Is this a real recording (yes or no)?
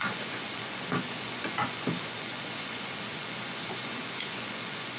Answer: no